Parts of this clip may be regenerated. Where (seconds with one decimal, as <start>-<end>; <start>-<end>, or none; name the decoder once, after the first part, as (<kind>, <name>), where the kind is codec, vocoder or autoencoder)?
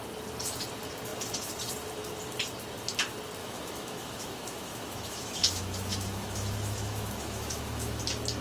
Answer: 3.4-8.0 (autoencoder, DAC-VAE)